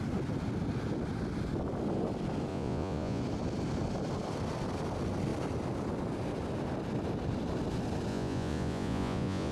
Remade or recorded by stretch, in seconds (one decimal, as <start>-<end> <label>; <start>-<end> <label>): 0.0-2.5 recorded; 2.5-3.2 remade; 3.2-8.1 recorded; 8.1-9.5 remade